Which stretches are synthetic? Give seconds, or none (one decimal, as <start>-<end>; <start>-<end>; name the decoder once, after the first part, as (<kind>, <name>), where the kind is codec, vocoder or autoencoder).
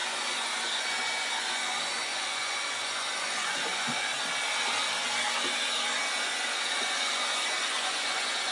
0.0-4.1 (vocoder, Vocos); 6.1-8.5